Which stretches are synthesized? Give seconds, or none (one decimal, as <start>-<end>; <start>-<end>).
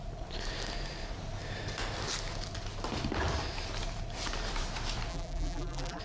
5.1-6.0